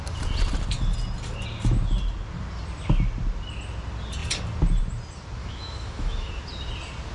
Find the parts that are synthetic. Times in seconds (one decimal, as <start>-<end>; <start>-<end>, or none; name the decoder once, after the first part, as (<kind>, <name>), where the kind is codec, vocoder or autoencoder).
5.4-6.3 (autoencoder, DAC-VAE)